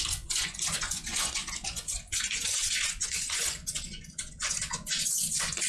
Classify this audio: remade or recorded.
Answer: remade